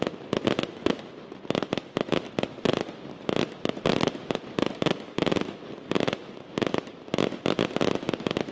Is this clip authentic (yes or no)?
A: yes